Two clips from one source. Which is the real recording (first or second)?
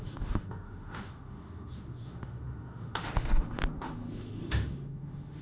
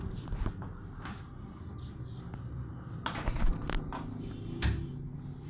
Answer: second